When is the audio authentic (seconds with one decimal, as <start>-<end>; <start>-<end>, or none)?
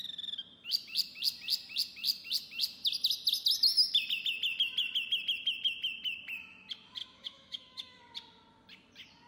0.0-7.0; 8.0-9.3